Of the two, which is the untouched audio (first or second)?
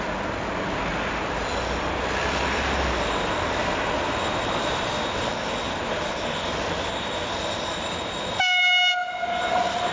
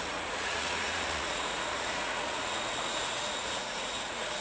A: first